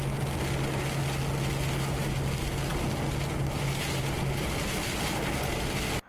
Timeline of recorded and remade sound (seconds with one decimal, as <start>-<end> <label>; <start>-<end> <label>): 0.0-6.1 recorded